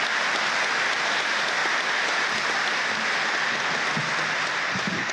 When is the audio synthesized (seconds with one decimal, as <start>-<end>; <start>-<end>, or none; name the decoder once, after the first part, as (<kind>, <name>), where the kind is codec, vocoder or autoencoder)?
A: none